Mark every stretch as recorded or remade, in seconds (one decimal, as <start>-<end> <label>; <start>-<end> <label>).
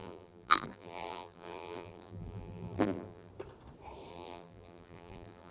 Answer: 0.0-3.3 remade; 3.3-4.1 recorded; 4.1-5.5 remade